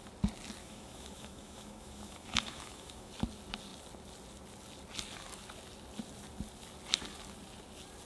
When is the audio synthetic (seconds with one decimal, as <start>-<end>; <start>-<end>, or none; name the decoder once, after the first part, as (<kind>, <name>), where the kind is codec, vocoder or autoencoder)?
0.6-3.1 (autoencoder, DAC-VAE)